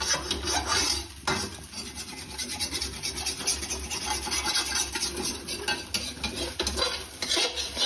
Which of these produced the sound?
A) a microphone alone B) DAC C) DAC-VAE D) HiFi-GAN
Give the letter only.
A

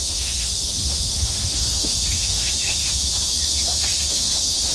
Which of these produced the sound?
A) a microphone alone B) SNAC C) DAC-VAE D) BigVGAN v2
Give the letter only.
C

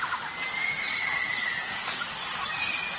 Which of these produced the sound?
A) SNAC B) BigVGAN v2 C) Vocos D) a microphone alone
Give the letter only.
D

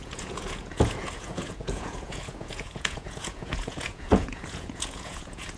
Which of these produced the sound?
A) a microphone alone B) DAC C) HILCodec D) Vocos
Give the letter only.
D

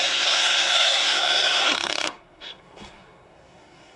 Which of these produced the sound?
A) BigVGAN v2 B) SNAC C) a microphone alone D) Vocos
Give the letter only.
B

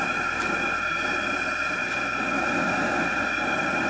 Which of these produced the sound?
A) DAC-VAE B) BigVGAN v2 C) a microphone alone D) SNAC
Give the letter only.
C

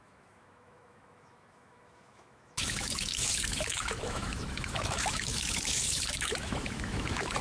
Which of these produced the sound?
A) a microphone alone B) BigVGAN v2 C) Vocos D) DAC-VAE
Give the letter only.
D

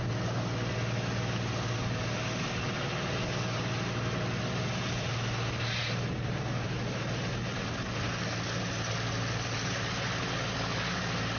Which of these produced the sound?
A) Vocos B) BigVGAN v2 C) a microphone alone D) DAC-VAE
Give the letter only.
C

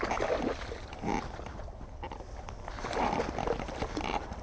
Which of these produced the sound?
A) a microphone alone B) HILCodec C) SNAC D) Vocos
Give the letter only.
A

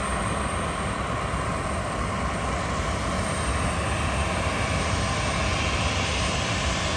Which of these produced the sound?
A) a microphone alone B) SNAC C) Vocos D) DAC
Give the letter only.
A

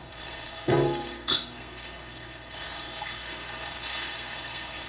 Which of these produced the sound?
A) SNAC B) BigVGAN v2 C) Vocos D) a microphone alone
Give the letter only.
A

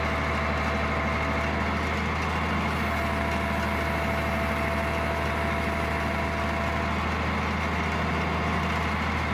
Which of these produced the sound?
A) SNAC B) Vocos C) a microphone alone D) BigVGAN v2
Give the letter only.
C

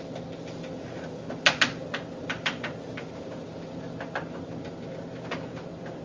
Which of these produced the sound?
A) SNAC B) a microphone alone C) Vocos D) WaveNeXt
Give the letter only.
B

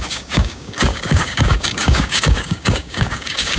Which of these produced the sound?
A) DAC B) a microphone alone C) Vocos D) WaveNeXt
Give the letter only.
A